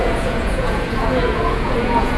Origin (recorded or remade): remade